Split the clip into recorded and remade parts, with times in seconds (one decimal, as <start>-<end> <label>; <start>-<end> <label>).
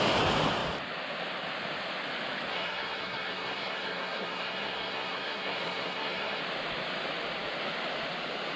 0.0-2.5 recorded; 2.5-6.4 remade; 6.4-8.6 recorded